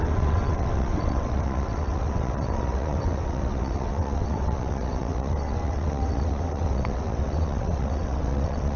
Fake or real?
fake